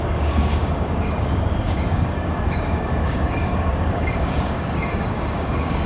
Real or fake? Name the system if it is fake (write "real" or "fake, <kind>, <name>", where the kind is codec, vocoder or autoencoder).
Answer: fake, codec, DAC